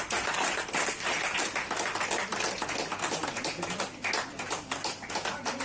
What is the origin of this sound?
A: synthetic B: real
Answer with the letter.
B